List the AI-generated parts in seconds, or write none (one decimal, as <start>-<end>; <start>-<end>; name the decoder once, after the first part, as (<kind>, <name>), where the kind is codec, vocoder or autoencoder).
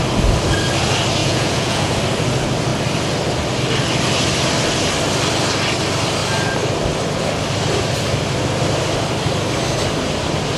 1.2-2.0 (vocoder, Vocos)